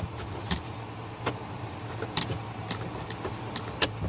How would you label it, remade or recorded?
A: recorded